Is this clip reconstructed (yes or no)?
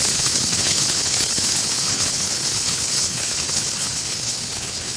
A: yes